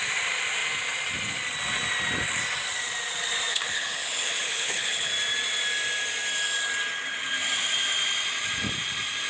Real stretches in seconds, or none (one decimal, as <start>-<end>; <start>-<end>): 0.0-3.5; 5.1-9.3